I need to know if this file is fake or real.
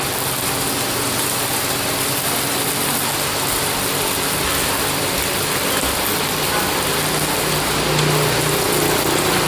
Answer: real